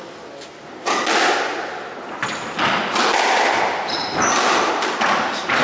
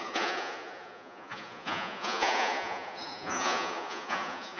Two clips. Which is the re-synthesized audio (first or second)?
second